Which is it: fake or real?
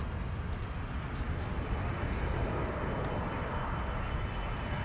real